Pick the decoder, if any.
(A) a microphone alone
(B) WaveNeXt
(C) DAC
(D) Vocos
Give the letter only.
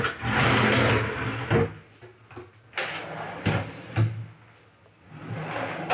A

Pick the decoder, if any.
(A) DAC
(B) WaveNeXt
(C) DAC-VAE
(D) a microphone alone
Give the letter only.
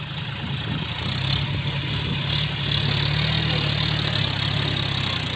D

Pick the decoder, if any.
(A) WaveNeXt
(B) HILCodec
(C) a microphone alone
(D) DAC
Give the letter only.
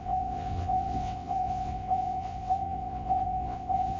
A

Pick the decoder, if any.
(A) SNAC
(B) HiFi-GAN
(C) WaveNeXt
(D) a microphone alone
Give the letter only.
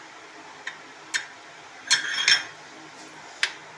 D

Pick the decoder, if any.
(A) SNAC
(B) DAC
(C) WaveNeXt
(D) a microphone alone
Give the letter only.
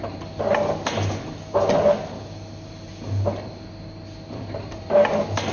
D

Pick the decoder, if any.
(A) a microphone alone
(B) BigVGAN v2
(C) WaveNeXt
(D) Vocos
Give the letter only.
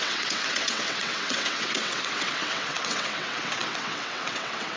C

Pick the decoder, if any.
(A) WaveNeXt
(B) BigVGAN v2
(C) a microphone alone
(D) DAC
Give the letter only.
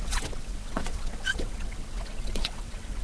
A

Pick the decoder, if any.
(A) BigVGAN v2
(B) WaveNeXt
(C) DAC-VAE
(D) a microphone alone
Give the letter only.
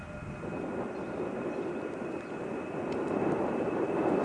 D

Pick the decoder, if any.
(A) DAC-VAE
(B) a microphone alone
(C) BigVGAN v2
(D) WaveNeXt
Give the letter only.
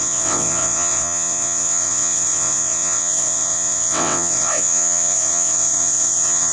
D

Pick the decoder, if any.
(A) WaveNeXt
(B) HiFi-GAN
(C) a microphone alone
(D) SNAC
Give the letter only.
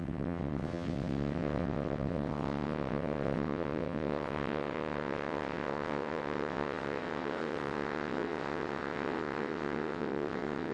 A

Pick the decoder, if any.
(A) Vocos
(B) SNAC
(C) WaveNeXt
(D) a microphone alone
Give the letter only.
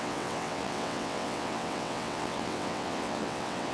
C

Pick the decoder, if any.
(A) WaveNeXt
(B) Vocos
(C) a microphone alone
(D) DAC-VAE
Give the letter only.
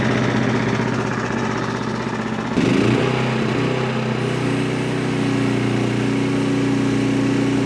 C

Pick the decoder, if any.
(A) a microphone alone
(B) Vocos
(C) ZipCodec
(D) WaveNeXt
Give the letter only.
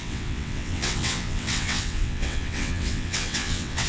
D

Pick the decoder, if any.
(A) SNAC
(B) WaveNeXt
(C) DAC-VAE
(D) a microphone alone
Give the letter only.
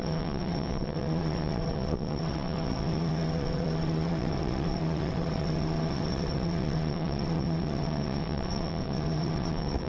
B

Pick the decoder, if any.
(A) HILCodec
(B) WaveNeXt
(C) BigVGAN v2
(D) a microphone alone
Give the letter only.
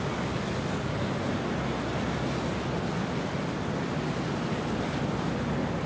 D